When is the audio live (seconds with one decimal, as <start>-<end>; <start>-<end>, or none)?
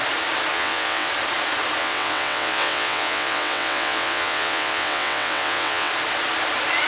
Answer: 0.0-0.5; 1.1-1.8; 5.9-6.9